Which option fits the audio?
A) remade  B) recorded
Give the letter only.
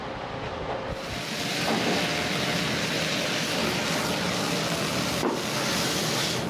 B